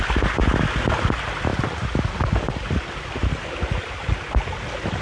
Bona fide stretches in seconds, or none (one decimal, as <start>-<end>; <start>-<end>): 0.0-5.0